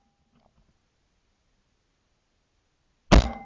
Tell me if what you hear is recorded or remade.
recorded